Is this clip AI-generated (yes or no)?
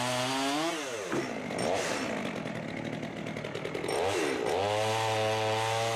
no